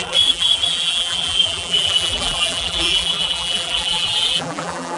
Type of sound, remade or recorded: remade